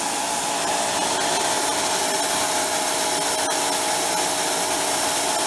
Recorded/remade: recorded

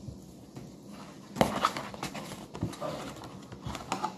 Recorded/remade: recorded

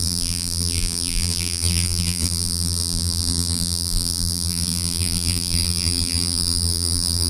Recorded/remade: remade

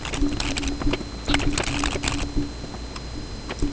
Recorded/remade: recorded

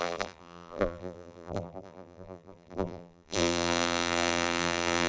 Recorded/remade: remade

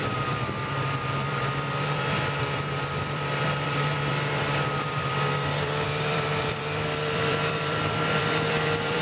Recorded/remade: remade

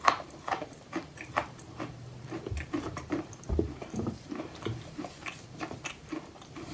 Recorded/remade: remade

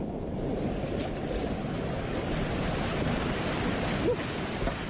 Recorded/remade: recorded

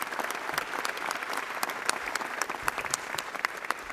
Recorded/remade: remade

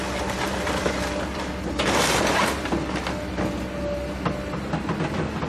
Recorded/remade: recorded